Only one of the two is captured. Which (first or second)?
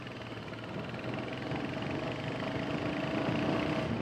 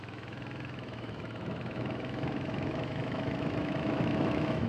first